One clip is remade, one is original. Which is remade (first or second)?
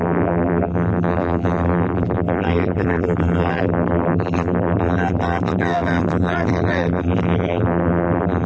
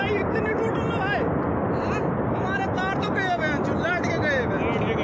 first